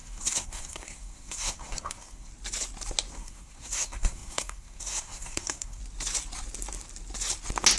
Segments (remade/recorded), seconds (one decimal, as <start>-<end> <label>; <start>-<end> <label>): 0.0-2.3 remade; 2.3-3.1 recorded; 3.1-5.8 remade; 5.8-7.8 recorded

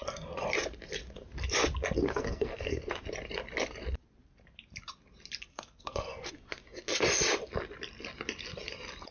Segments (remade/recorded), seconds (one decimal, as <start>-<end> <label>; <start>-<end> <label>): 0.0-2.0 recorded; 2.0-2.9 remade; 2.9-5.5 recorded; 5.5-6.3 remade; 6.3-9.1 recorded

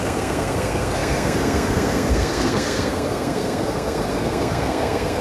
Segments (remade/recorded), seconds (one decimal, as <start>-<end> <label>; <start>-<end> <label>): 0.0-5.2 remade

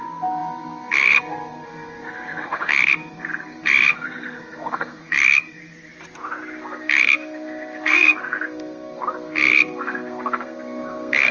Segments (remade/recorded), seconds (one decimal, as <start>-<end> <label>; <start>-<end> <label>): 0.0-5.6 remade; 5.6-6.6 recorded; 6.6-11.3 remade

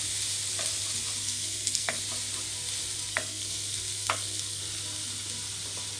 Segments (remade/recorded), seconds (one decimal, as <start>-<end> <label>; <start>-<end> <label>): 0.0-1.2 recorded; 1.2-2.0 remade; 2.0-3.1 recorded; 3.1-4.6 remade; 4.6-6.0 recorded

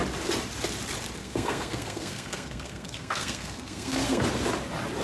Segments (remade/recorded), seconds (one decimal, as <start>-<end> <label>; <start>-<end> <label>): 0.0-1.2 recorded; 1.2-4.2 remade; 4.2-5.0 recorded